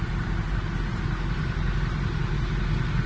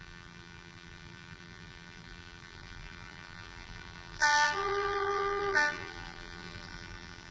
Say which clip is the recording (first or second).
first